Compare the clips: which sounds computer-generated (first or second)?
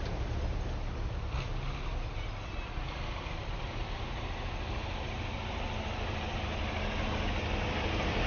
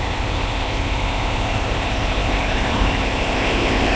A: second